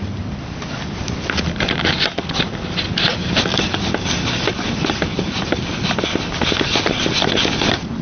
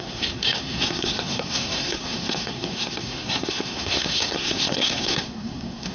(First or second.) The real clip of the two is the first